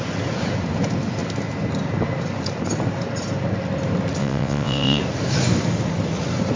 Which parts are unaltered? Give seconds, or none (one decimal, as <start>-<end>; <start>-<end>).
0.0-4.2; 5.0-6.6